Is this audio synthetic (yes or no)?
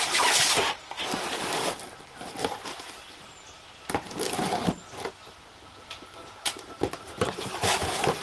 no